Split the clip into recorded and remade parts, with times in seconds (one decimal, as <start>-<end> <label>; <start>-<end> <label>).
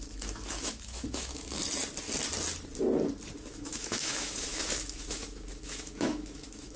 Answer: 0.0-1.6 remade; 1.6-3.4 recorded; 3.4-6.8 remade